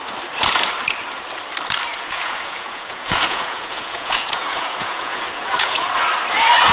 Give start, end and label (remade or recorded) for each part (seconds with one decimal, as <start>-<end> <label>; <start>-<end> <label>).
0.0-1.9 recorded; 1.9-5.9 remade; 5.9-6.7 recorded